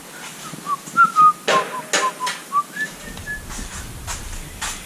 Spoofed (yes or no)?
no